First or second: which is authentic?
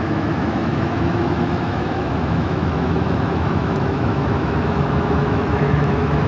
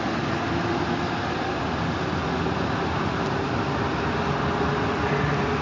second